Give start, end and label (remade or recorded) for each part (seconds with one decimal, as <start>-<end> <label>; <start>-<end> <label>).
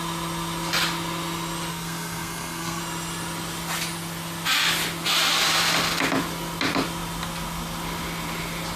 0.0-1.7 recorded; 1.7-2.8 remade; 2.8-8.8 recorded